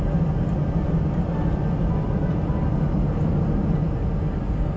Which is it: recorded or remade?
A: recorded